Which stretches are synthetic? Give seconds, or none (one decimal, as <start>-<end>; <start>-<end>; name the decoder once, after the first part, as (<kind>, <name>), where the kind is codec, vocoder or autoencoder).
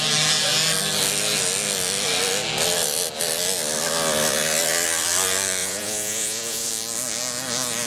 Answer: 5.6-6.7 (vocoder, Vocos)